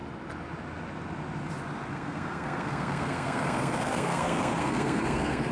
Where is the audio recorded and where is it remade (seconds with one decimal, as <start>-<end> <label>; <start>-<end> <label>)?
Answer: 0.0-1.9 recorded; 1.9-5.5 remade